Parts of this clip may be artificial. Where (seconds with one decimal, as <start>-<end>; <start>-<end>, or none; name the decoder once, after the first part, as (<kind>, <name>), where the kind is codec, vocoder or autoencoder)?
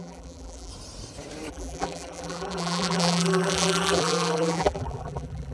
0.0-0.7 (vocoder, BigVGAN v2); 1.5-5.5